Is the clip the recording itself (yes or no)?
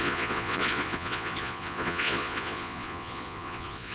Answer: no